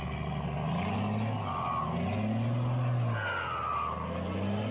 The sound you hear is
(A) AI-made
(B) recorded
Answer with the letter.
B